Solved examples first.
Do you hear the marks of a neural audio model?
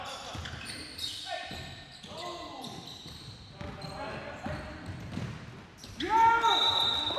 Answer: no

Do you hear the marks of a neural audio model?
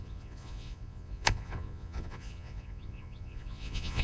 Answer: yes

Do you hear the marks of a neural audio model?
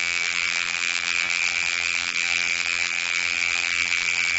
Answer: yes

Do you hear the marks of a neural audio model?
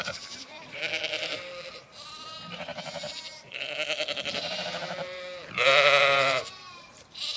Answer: yes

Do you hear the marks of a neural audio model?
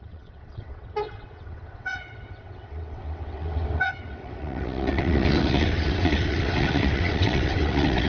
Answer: yes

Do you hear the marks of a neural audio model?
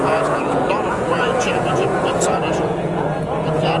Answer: yes